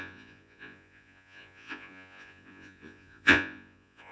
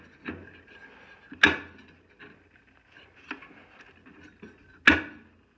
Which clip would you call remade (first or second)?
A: first